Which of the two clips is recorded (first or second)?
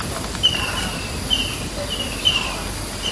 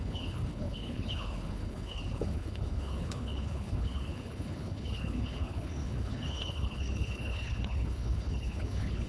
first